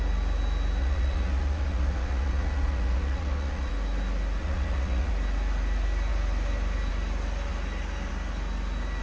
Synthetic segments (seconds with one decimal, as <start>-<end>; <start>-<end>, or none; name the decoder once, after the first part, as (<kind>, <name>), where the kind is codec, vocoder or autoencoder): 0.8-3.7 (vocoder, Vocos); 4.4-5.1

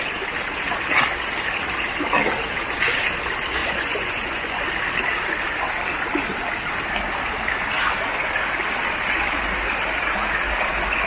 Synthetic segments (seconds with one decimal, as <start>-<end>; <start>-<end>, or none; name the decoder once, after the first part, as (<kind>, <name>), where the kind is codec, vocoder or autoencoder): 3.6-4.6 (vocoder, Vocos)

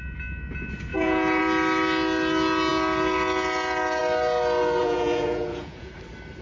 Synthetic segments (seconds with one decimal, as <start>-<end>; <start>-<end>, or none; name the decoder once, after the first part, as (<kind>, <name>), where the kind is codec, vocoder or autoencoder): 0.9-1.4 (vocoder, Vocos); 4.8-5.9

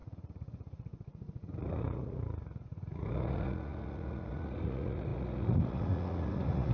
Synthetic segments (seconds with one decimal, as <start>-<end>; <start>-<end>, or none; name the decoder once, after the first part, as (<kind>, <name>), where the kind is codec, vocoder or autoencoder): 0.0-6.7 (vocoder, Vocos)

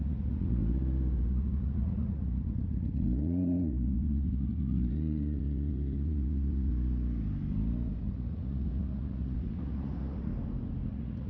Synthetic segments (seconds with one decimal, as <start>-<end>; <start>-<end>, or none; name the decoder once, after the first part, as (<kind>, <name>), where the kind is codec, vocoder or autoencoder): 0.0-0.6 (vocoder, Vocos); 1.3-6.7; 8.0-10.3; 10.9-11.3

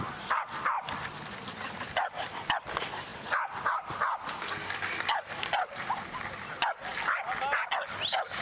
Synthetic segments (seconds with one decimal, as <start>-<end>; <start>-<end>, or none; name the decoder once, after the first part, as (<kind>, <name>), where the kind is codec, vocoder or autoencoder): none

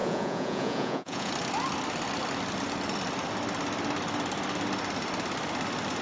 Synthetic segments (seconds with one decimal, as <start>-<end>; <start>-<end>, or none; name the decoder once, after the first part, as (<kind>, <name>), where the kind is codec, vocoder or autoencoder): 0.0-1.3 (vocoder, Vocos)

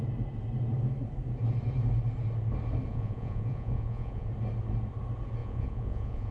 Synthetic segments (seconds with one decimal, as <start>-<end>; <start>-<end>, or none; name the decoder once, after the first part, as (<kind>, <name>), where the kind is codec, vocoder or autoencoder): 2.9-4.3 (vocoder, Vocos); 5.4-6.3